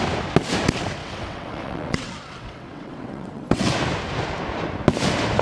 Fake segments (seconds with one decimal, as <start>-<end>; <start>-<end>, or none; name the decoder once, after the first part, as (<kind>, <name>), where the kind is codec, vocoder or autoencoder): 1.0-3.7 (vocoder, WaveNeXt)